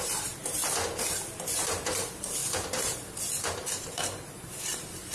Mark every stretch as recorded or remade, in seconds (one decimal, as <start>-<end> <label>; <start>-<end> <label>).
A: 0.0-0.6 remade; 0.6-1.4 recorded; 1.4-2.4 remade; 2.4-3.8 recorded; 3.8-5.1 remade